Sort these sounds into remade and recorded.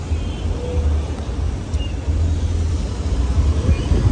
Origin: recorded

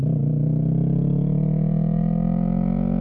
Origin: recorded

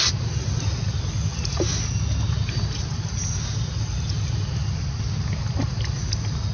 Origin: recorded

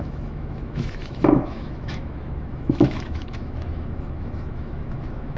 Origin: remade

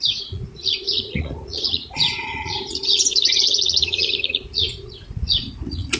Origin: remade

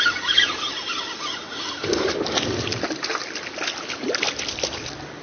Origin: recorded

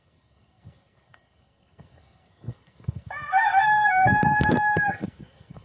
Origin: remade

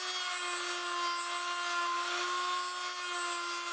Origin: recorded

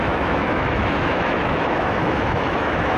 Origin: remade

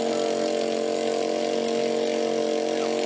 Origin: recorded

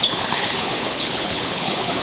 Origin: remade